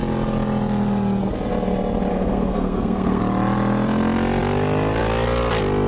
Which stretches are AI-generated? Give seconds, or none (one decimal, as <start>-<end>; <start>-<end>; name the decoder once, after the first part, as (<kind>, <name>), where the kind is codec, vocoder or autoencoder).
2.1-3.2 (codec, SNAC)